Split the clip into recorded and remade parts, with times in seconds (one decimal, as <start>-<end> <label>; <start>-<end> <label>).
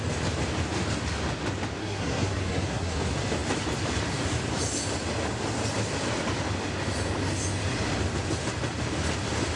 0.0-1.8 recorded; 1.8-3.0 remade; 3.0-9.6 recorded